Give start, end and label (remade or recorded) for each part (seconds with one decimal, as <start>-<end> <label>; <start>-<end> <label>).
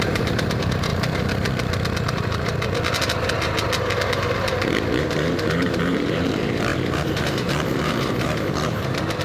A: 0.0-0.9 remade; 0.9-5.0 recorded; 5.0-9.2 remade